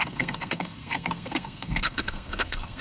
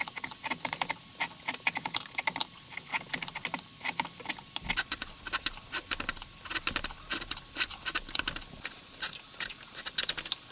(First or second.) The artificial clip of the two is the first